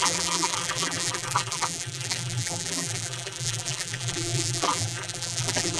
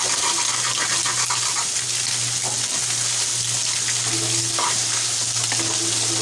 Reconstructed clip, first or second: first